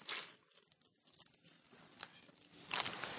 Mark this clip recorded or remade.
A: recorded